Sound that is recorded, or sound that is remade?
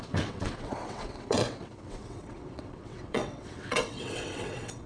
remade